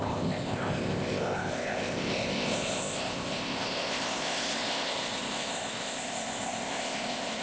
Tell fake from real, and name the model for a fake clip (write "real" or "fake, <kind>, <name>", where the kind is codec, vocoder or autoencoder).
fake, codec, ZipCodec